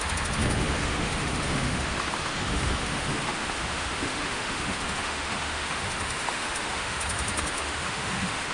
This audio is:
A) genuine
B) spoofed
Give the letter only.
B